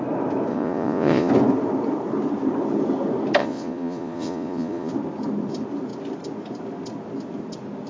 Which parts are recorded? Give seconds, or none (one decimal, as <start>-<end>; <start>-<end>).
0.0-0.5; 1.3-3.4; 4.9-7.9